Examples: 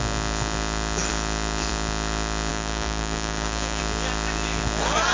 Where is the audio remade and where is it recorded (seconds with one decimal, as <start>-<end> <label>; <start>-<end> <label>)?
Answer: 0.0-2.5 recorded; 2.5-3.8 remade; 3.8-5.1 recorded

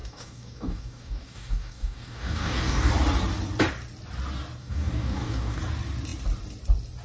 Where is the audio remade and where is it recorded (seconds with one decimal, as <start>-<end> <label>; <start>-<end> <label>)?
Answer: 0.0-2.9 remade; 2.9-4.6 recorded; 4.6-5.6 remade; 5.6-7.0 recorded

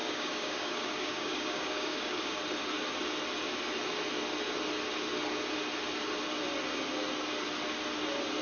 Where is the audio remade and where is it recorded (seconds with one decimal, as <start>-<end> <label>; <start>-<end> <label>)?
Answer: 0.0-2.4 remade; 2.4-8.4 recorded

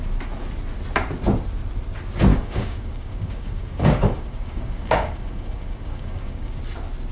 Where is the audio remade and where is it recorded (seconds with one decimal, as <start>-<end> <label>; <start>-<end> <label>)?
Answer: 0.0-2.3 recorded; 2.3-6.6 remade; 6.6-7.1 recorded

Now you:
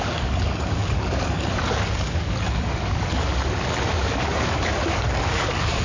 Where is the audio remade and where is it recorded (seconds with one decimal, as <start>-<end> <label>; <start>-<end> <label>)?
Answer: 0.0-5.8 remade